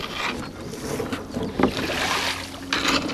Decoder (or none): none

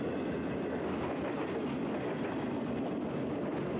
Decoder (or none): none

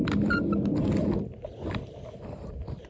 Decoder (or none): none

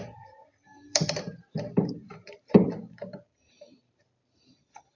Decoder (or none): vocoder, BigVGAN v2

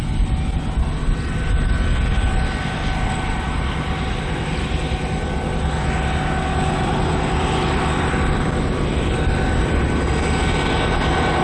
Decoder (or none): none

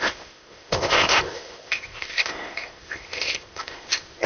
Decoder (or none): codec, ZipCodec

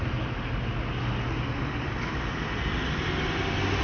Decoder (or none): none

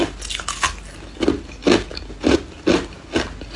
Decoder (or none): none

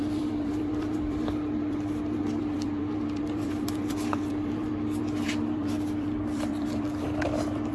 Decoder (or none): vocoder, BigVGAN v2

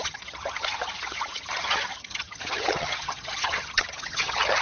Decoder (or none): vocoder, HiFi-GAN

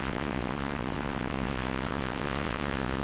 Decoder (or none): vocoder, WaveNeXt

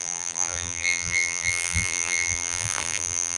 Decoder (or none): vocoder, BigVGAN v2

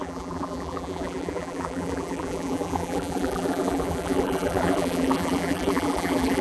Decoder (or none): vocoder, BigVGAN v2